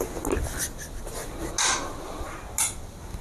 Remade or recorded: recorded